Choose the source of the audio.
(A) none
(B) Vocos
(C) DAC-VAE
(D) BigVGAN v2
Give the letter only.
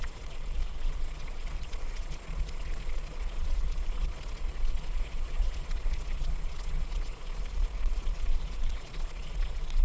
B